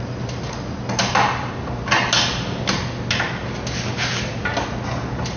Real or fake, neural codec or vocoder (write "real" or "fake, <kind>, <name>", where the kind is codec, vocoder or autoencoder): real